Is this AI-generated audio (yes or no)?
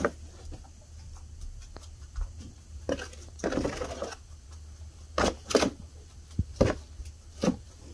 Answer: no